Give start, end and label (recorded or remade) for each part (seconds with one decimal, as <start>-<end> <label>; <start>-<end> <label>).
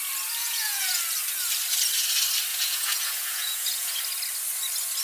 0.0-0.4 recorded; 0.4-1.0 remade; 1.0-2.5 recorded; 2.5-4.0 remade; 4.0-5.0 recorded